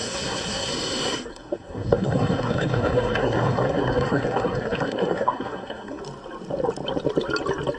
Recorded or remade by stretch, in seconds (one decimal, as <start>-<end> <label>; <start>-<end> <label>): 0.0-0.7 remade; 0.7-1.3 recorded; 1.3-6.0 remade; 6.0-7.8 recorded